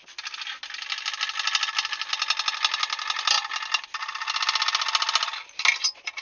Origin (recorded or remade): recorded